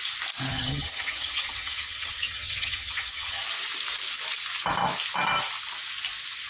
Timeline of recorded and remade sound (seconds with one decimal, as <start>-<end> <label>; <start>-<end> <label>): 0.0-0.5 recorded; 0.5-3.4 remade; 3.4-6.5 recorded